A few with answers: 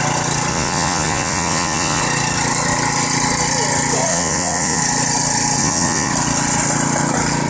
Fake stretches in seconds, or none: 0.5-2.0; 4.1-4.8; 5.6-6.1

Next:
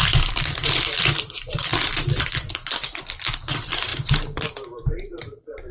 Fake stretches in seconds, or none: 0.0-3.9; 4.4-5.7

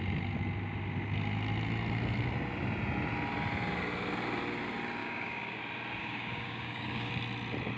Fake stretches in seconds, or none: 5.0-5.6; 6.0-7.1

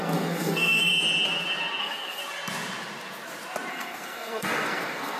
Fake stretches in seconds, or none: 0.0-0.9; 1.8-2.2; 3.7-5.2

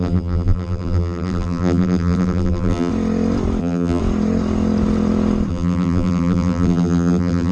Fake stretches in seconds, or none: 0.0-2.9; 3.6-4.0; 5.5-7.5

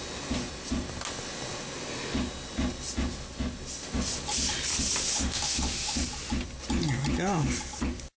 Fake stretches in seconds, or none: 5.1-6.0